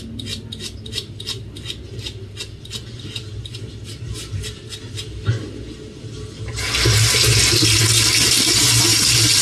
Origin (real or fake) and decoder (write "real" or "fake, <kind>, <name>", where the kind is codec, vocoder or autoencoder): real